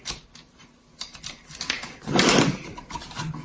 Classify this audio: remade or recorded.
recorded